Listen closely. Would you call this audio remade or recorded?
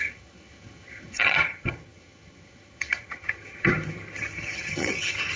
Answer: remade